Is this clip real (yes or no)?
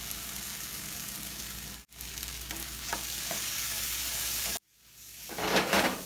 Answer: no